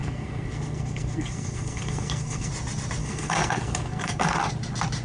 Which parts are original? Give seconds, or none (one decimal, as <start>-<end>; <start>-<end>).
2.5-3.0; 4.5-5.0